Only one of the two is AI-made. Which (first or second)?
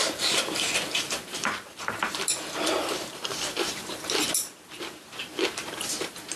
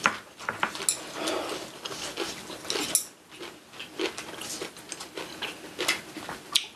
first